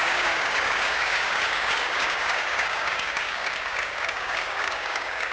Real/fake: fake